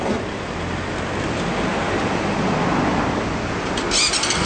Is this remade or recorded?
recorded